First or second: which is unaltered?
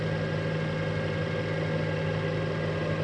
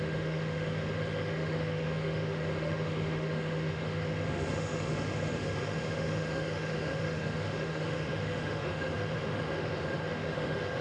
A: first